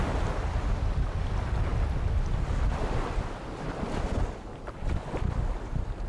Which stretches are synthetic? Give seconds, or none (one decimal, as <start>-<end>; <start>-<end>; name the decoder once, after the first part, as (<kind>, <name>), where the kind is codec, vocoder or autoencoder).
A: none